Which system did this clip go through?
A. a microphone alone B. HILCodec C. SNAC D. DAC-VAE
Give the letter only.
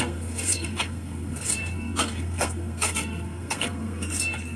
C